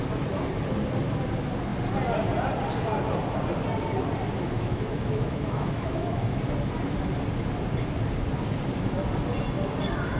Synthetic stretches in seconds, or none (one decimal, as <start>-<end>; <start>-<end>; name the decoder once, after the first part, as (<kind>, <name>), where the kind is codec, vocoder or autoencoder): 4.3-6.4 (autoencoder, DAC-VAE)